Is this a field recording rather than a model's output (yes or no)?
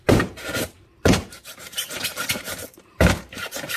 no